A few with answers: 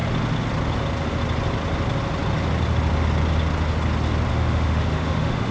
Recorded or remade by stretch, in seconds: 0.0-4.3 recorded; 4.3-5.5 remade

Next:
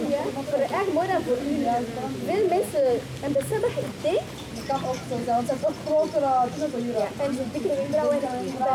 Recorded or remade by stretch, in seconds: 0.0-8.7 recorded

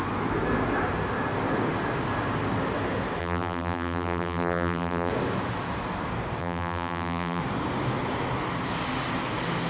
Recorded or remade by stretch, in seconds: 0.0-3.2 recorded; 3.2-5.1 remade; 5.1-6.4 recorded; 6.4-7.4 remade; 7.4-9.7 recorded

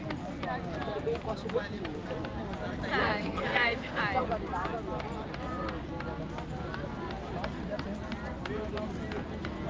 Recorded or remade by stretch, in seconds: 0.0-3.0 recorded; 3.0-4.0 remade; 4.0-9.7 recorded

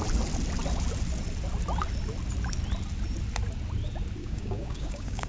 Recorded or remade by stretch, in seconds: 0.0-4.2 recorded; 4.2-5.3 remade

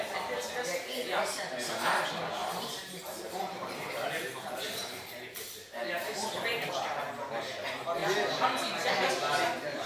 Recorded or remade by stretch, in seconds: 0.0-2.4 recorded; 2.4-5.8 remade; 5.8-6.5 recorded; 6.5-7.1 remade; 7.1-9.9 recorded